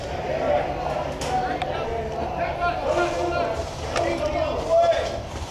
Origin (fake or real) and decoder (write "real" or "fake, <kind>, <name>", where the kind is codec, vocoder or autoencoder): real